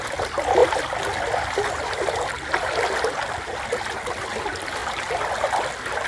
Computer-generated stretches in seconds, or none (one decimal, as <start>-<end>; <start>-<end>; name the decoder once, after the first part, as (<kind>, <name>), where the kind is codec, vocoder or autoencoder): none